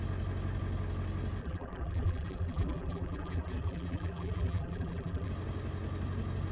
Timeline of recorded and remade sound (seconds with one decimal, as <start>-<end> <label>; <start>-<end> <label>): 0.0-1.4 recorded; 1.4-5.3 remade; 5.3-6.5 recorded